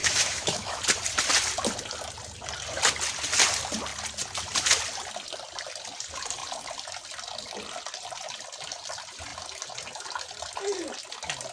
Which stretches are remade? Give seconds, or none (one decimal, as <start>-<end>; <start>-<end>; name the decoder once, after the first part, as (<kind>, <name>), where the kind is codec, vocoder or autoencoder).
0.0-0.8 (autoencoder, DAC-VAE)